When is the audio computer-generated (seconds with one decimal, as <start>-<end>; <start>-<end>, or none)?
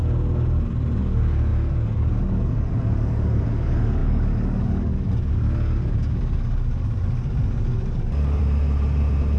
1.0-8.4